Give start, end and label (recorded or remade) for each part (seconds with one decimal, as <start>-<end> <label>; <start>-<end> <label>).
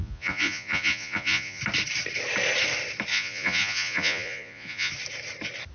0.0-1.6 remade; 1.6-3.1 recorded; 3.1-4.9 remade; 4.9-5.7 recorded